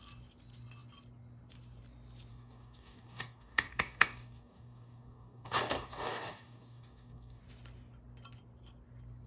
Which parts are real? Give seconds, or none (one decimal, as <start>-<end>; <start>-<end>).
0.0-2.3; 7.4-9.3

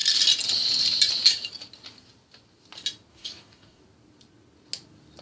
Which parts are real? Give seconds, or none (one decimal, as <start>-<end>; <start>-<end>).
0.0-3.1; 3.8-5.2

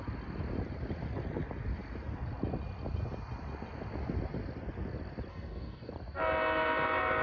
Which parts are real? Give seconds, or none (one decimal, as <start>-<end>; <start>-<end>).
0.0-5.3; 5.9-7.2